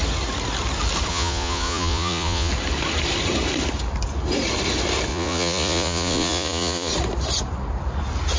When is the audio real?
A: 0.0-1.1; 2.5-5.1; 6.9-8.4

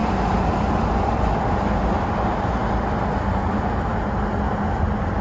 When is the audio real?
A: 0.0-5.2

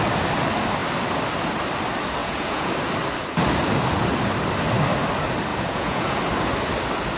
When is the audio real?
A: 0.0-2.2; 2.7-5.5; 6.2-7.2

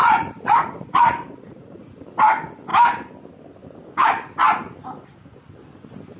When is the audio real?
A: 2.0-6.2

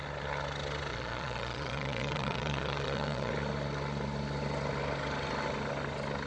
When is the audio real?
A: 0.0-0.9; 3.3-6.3